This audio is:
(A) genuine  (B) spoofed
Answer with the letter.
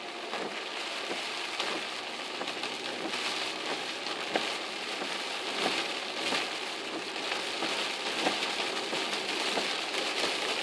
A